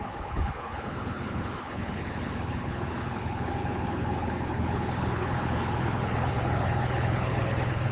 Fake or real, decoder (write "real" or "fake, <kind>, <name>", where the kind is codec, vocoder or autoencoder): fake, codec, HILCodec